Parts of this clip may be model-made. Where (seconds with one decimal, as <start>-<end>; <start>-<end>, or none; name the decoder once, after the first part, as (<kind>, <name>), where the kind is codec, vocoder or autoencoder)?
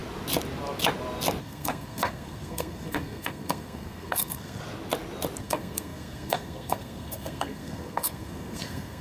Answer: 1.4-4.6 (codec, SNAC); 5.4-9.0